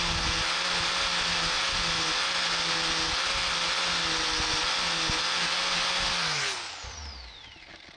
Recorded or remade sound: recorded